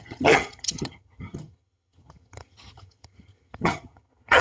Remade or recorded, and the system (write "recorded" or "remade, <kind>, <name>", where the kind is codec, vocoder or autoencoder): remade, vocoder, HiFi-GAN